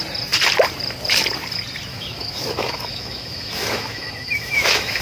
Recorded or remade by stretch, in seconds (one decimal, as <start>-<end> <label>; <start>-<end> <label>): 0.0-1.9 recorded; 1.9-5.0 remade